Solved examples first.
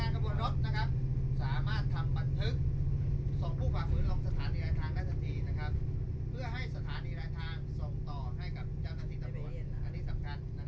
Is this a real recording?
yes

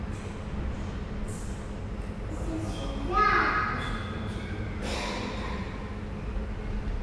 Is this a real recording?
yes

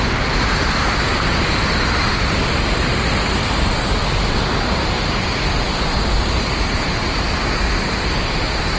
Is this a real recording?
yes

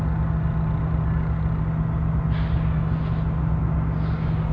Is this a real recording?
yes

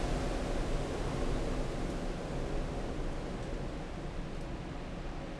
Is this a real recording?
yes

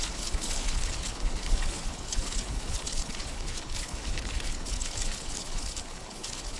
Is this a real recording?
no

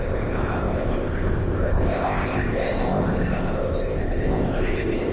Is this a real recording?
no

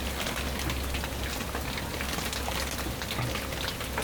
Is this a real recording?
yes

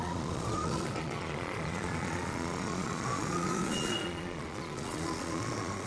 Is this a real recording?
no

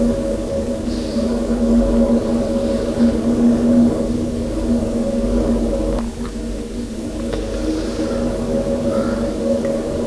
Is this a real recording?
no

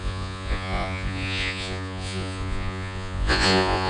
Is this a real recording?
no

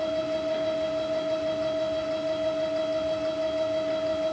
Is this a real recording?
yes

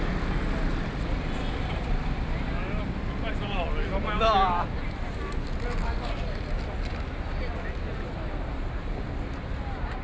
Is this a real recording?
yes